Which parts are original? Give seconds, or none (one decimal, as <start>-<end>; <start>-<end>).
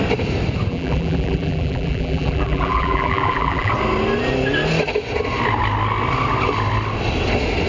0.0-0.7; 3.7-7.7